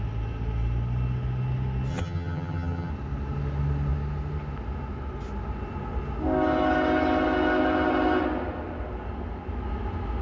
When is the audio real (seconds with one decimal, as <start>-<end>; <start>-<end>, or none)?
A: 0.0-1.9; 2.9-10.2